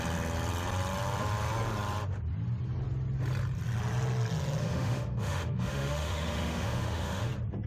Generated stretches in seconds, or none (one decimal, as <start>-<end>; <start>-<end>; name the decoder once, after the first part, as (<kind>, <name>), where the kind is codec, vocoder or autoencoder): 4.6-7.3 (autoencoder, DAC-VAE)